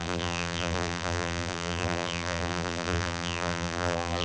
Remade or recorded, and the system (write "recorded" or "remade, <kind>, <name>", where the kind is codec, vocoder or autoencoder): remade, vocoder, BigVGAN v2